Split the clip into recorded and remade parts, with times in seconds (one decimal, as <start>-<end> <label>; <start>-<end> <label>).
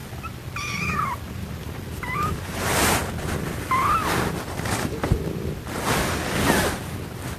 0.0-2.0 recorded; 2.0-3.0 remade; 3.0-7.4 recorded